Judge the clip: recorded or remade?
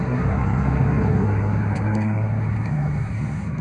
remade